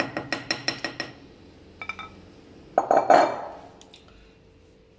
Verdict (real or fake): real